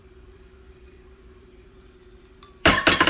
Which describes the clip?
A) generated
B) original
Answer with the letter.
A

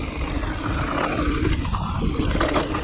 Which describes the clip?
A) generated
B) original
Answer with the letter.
B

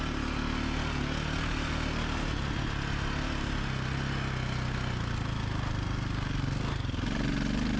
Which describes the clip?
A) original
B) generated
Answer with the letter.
A